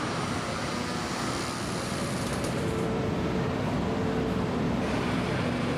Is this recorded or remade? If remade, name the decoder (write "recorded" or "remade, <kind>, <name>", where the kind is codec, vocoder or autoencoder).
remade, vocoder, BigVGAN v2